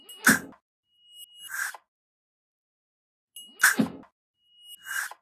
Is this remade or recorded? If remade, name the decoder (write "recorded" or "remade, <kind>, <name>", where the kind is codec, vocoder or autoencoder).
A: recorded